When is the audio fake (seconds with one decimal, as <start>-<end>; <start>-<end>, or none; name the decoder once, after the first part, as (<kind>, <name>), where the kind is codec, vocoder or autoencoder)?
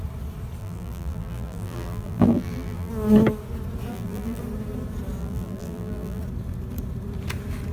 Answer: 0.6-2.9 (vocoder, BigVGAN v2); 3.9-4.4; 5.2-6.2